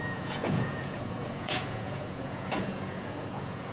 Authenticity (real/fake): fake